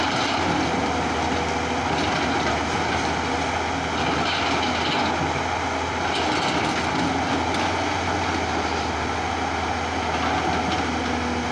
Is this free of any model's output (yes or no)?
yes